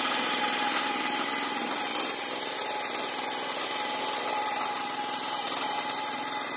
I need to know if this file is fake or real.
real